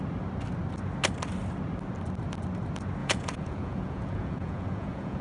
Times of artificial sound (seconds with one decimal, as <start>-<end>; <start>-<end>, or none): 3.0-5.2